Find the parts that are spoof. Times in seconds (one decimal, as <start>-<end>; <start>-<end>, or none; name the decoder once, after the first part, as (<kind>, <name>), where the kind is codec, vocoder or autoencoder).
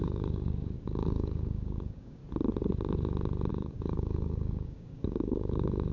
0.0-2.2 (codec, DAC); 3.5-5.9